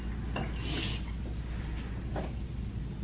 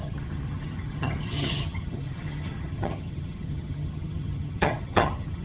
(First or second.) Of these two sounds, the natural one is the first